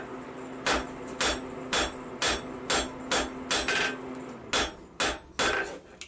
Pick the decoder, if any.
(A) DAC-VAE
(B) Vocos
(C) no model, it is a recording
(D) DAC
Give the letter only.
C